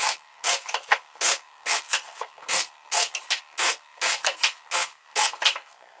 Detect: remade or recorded remade